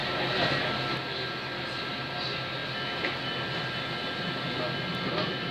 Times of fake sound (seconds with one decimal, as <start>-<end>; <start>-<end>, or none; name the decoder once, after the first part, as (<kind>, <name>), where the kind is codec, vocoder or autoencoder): none